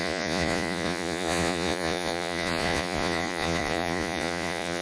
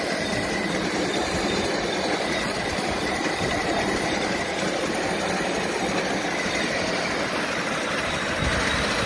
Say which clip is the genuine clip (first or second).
second